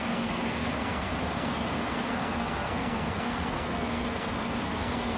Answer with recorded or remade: remade